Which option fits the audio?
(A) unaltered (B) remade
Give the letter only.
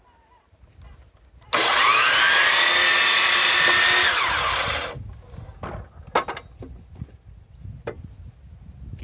A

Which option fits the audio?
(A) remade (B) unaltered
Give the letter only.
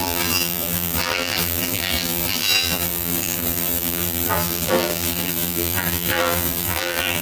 A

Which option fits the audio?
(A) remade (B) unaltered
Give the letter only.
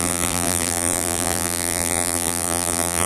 A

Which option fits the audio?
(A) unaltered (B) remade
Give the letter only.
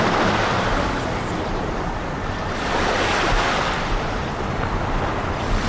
A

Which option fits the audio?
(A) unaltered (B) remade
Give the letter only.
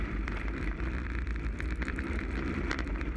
B